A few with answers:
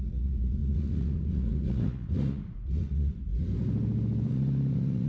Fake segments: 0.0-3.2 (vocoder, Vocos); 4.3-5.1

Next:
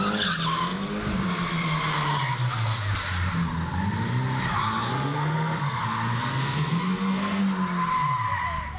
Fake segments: 4.9-5.8 (codec, SNAC); 6.3-7.4

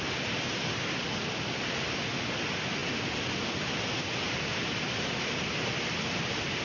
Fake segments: none

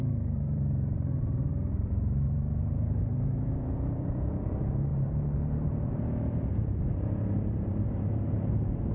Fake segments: 0.0-8.9 (vocoder, BigVGAN v2)

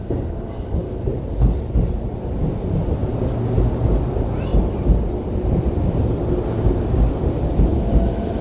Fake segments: none